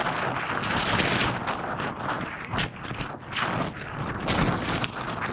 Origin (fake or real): real